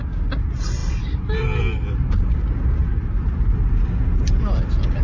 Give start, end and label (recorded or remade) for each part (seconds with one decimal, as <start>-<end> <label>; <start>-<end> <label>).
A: 0.0-0.8 recorded; 0.8-1.6 remade; 1.6-2.8 recorded; 2.8-4.0 remade; 4.0-5.0 recorded